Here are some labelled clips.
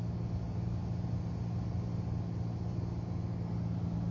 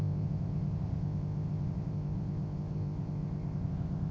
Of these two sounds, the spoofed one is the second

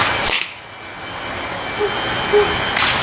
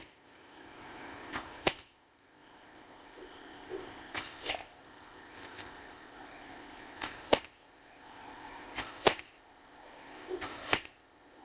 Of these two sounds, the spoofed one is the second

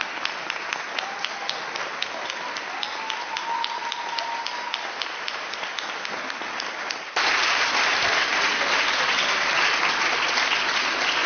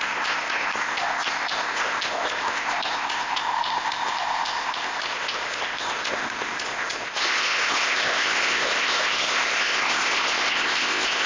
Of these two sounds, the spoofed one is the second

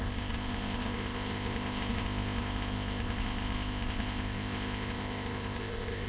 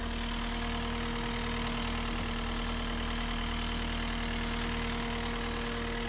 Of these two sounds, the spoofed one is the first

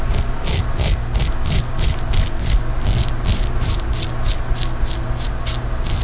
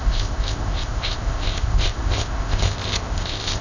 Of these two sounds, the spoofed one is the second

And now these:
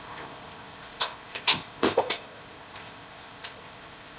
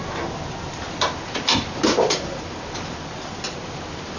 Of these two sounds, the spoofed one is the first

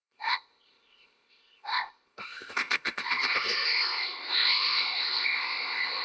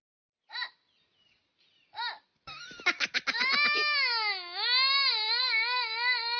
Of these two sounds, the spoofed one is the first